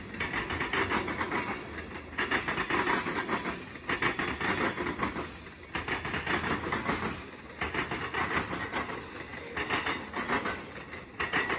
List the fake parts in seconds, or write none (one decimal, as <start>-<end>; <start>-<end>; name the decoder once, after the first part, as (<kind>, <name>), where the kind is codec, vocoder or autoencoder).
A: none

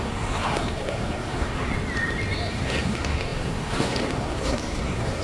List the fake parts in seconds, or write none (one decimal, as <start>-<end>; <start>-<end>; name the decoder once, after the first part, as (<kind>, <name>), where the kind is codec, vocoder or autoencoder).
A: 0.0-1.7 (codec, SNAC); 2.5-5.2